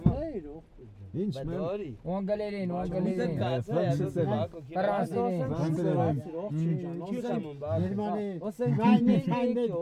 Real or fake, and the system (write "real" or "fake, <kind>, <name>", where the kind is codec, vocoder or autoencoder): real